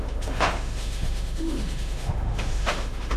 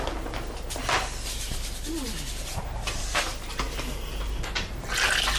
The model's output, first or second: first